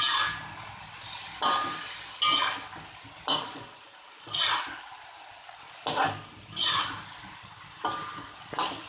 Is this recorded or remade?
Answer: recorded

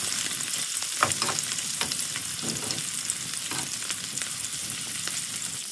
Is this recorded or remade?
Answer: recorded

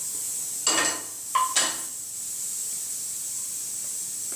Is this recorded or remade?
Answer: recorded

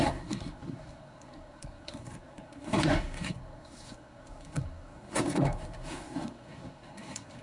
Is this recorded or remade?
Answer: remade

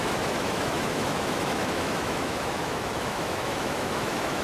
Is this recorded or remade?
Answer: remade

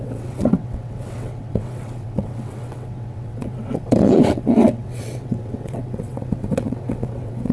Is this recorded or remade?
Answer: remade